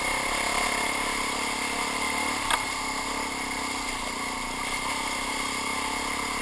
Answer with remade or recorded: recorded